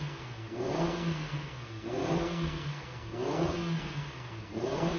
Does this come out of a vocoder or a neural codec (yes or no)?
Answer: yes